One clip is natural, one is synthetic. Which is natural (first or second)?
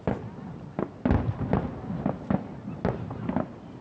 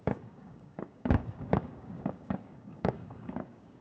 first